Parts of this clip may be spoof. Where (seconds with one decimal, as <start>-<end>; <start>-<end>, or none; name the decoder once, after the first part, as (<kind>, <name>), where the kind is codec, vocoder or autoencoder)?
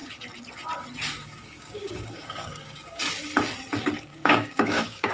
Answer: 1.2-3.0 (codec, DAC); 4.1-5.1